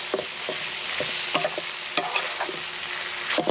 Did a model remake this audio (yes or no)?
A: no